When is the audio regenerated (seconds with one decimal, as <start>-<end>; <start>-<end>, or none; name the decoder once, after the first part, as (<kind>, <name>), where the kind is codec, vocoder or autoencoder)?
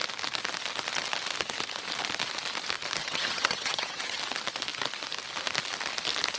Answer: 3.0-4.2 (vocoder, HiFi-GAN)